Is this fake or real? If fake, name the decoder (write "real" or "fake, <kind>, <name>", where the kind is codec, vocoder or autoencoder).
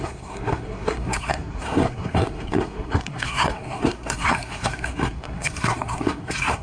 fake, codec, SNAC